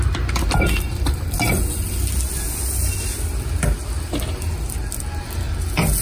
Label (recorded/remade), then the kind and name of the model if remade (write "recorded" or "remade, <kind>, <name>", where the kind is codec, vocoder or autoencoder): recorded